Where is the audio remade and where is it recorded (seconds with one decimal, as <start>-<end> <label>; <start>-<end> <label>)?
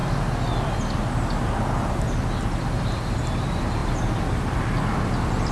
0.0-5.5 recorded